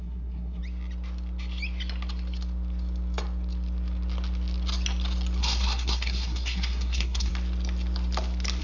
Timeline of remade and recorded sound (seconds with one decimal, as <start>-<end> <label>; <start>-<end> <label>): 0.0-0.6 remade; 0.6-5.4 recorded; 5.4-7.3 remade; 7.3-8.6 recorded